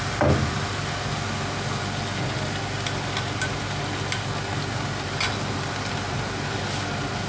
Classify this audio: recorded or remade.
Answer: recorded